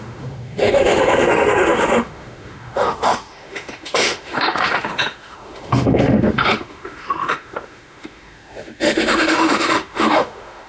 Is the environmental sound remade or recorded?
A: remade